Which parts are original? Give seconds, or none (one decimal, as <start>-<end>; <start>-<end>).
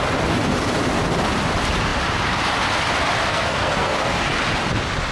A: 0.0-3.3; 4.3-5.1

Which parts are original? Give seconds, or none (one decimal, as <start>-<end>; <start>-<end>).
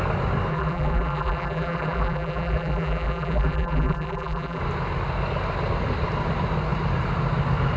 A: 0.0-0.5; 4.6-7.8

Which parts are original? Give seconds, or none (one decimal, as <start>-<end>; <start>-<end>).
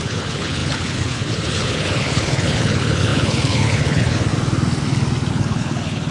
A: 4.3-5.3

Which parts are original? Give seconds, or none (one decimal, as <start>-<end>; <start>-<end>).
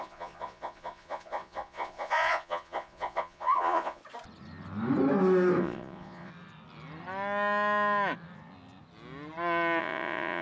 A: 4.0-5.6; 6.3-9.8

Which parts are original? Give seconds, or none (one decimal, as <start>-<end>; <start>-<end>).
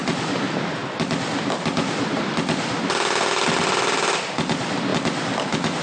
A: 0.0-5.8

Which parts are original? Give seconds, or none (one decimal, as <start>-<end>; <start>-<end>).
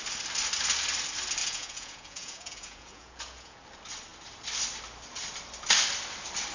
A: 0.0-1.4; 3.6-6.5